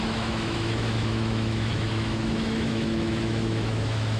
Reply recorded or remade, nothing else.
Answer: remade